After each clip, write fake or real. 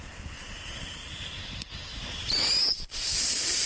fake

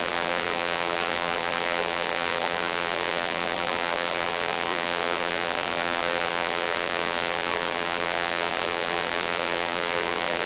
fake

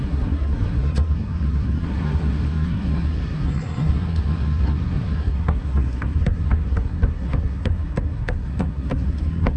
fake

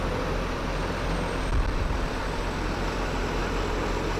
real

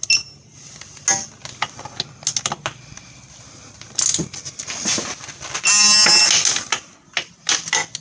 real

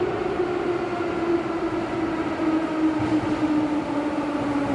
real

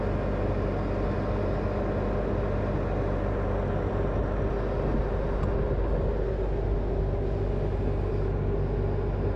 real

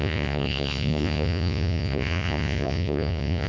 fake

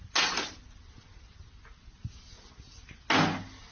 real